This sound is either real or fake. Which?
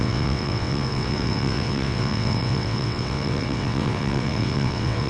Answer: fake